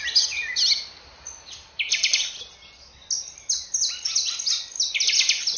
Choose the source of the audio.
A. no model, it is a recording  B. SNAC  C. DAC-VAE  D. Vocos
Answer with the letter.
A